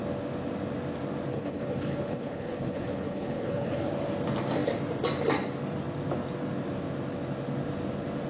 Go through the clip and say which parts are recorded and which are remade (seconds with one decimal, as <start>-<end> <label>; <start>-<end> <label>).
0.0-1.3 recorded; 1.3-3.9 remade; 3.9-8.3 recorded